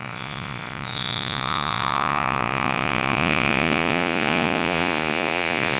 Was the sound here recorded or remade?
remade